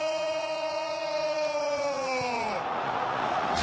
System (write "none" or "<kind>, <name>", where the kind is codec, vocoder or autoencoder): vocoder, Vocos